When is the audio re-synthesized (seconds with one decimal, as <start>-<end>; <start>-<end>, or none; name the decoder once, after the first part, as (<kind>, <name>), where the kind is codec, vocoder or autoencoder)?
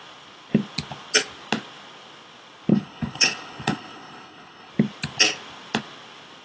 2.7-4.7 (codec, HILCodec)